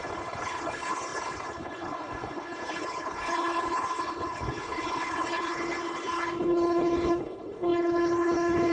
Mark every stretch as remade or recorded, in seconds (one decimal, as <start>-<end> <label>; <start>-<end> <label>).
0.0-8.7 remade